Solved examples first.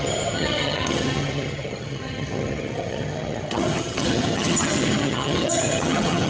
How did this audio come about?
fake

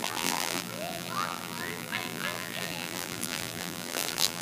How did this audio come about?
fake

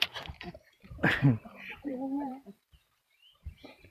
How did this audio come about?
fake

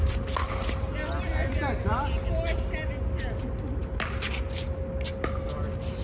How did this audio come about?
real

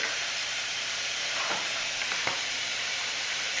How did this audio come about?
fake